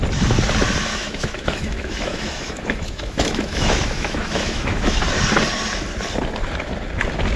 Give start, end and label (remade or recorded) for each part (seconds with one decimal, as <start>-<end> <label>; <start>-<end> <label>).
0.0-0.9 recorded; 0.9-5.0 remade; 5.0-7.4 recorded